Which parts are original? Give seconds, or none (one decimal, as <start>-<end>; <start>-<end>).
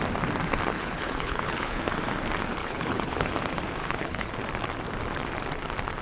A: 0.0-0.7; 1.8-2.6; 3.3-3.8; 4.3-6.0